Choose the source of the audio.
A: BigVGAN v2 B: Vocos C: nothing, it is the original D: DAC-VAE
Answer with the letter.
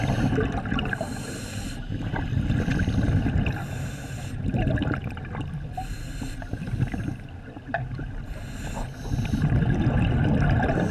C